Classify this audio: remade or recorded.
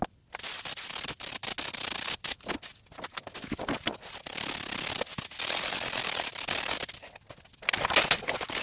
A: recorded